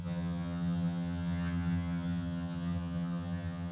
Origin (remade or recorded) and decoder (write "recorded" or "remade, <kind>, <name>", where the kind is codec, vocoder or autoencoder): remade, vocoder, HiFi-GAN